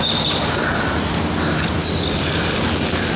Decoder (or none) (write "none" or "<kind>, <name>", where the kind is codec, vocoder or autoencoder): none